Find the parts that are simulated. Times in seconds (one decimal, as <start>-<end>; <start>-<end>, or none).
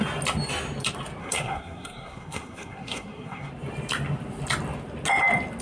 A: 1.2-3.5